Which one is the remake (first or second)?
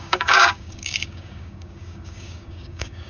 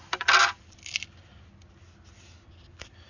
first